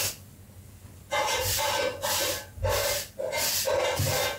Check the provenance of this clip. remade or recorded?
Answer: recorded